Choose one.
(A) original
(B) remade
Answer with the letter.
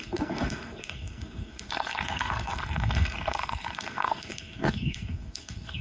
B